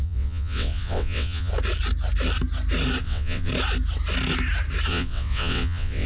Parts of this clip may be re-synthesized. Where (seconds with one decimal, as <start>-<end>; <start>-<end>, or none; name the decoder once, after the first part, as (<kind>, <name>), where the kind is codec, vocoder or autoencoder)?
0.0-1.5 (vocoder, WaveNeXt); 3.0-3.5; 4.9-6.1